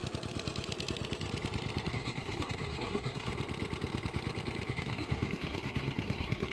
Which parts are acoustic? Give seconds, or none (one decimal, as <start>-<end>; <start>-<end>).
0.0-1.9; 3.3-4.7